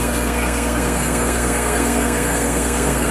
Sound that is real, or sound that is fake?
fake